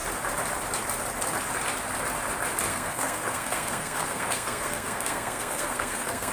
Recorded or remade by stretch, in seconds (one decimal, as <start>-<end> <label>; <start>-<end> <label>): 0.0-2.7 recorded; 2.7-6.3 remade